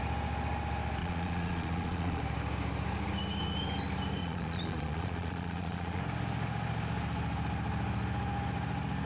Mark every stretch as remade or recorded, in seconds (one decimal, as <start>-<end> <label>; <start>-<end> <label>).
0.0-1.0 recorded; 1.0-2.2 remade; 2.2-4.2 recorded; 4.2-6.0 remade; 6.0-9.1 recorded

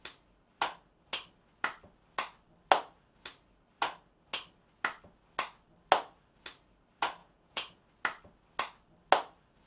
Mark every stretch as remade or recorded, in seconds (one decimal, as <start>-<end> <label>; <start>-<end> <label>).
0.0-7.2 recorded; 7.2-7.8 remade; 7.8-9.7 recorded

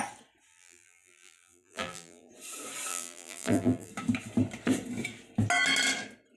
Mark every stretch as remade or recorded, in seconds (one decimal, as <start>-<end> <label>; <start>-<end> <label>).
0.0-0.5 recorded; 0.5-2.3 remade; 2.3-2.9 recorded; 2.9-3.9 remade; 3.9-6.4 recorded